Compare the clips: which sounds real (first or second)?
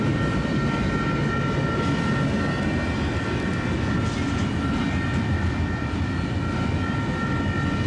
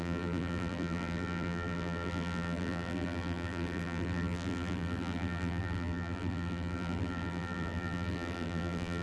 first